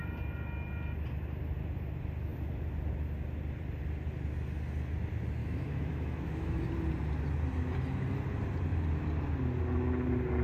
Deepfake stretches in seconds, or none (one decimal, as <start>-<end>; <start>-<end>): 5.4-6.7